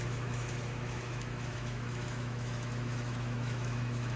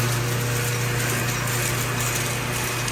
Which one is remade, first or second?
first